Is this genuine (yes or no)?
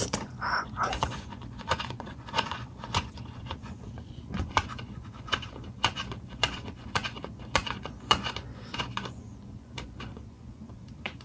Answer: no